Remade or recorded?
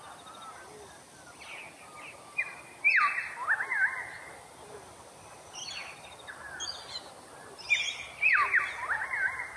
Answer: recorded